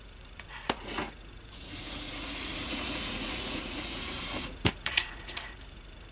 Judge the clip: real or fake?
fake